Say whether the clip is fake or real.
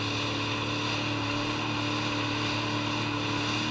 real